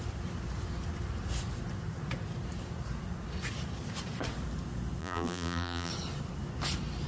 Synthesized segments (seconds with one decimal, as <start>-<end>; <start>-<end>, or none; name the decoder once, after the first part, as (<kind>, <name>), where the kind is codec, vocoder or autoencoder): 5.0-5.9 (vocoder, BigVGAN v2)